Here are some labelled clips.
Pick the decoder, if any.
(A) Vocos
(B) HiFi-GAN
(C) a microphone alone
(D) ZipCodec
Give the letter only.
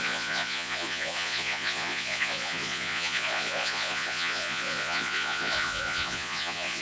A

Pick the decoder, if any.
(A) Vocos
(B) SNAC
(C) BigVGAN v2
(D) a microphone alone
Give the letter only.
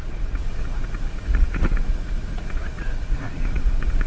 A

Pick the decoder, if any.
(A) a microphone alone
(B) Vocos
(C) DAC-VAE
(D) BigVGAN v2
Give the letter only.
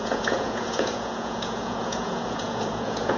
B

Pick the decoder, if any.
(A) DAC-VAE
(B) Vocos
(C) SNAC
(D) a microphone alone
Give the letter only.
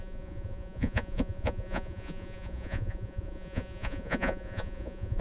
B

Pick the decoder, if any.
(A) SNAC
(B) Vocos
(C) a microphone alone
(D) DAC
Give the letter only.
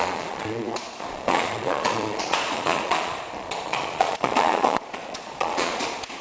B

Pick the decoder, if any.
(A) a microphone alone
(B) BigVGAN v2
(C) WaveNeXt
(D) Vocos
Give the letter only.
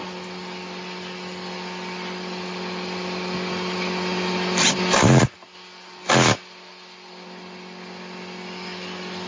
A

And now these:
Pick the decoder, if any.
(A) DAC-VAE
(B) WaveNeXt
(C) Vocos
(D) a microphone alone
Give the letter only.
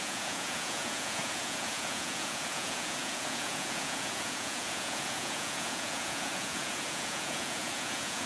C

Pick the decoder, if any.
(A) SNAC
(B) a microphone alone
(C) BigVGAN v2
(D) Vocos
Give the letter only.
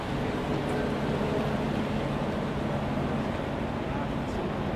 B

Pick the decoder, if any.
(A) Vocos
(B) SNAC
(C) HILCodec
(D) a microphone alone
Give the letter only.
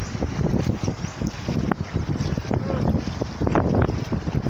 D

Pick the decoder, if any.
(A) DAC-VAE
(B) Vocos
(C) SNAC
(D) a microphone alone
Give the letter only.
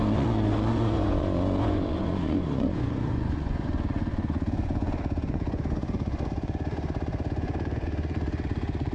B